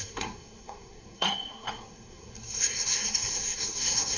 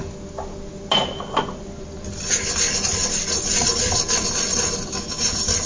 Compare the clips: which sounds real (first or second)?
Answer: second